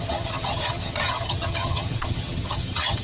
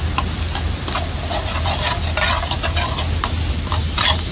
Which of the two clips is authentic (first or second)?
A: second